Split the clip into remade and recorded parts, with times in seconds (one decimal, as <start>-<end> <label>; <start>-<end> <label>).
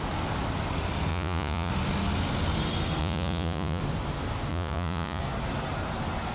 0.0-1.1 recorded; 1.1-1.7 remade; 1.7-3.0 recorded; 3.0-3.8 remade; 3.8-4.5 recorded; 4.5-5.2 remade; 5.2-6.3 recorded